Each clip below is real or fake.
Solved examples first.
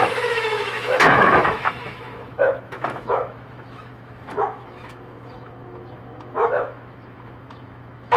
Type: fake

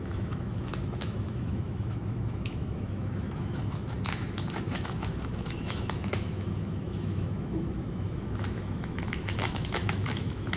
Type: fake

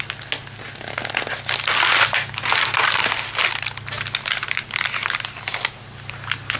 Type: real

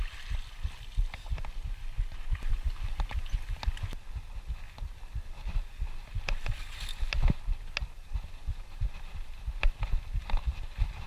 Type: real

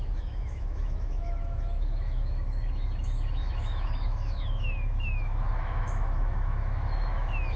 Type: fake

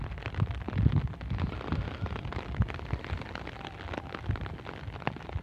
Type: real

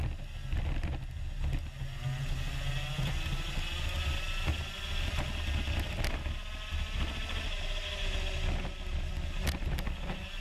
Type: real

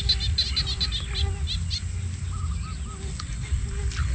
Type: real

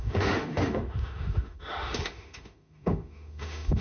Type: fake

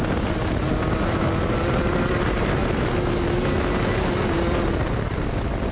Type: real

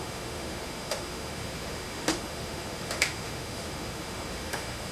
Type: fake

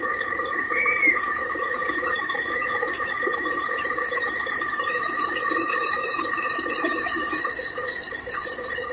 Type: fake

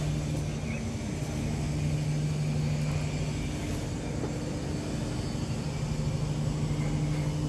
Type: real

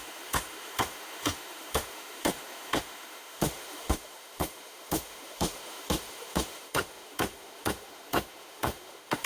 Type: fake